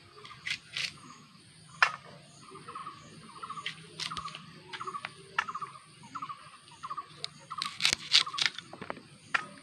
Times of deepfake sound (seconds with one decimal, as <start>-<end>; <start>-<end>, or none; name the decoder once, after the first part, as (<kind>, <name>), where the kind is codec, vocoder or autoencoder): 0.8-1.4 (autoencoder, DAC-VAE)